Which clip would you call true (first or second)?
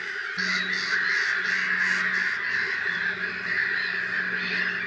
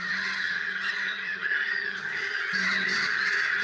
first